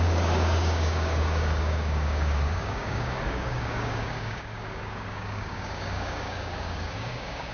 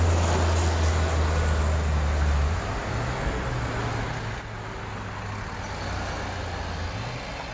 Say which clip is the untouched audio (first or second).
second